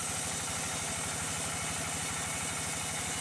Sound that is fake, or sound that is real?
real